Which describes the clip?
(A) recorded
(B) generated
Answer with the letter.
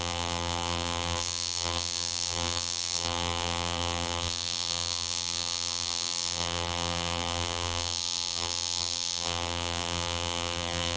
B